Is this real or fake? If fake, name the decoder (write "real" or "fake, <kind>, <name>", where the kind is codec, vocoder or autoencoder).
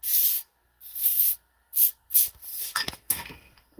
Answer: fake, codec, SNAC